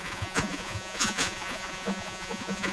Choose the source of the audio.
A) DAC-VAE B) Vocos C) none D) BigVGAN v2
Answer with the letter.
B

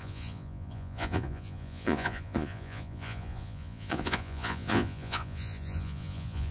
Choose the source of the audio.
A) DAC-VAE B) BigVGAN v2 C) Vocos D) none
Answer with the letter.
C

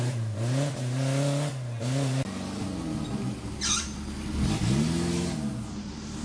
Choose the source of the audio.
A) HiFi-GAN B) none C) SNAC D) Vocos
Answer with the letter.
B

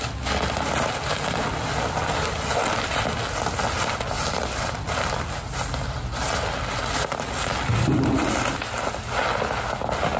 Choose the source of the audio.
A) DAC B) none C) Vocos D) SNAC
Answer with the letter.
B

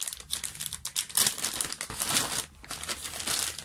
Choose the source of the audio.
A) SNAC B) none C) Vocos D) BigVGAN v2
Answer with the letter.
B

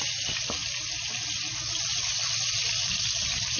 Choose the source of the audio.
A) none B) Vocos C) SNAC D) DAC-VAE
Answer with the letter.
A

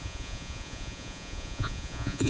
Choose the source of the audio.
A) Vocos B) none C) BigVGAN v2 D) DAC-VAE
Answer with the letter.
A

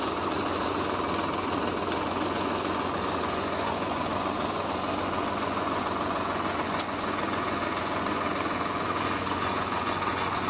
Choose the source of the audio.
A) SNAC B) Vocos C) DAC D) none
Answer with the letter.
B